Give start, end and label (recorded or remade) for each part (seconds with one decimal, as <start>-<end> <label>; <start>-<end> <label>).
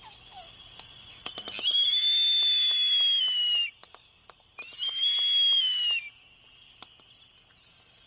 0.0-3.8 recorded; 3.8-4.9 remade; 4.9-8.1 recorded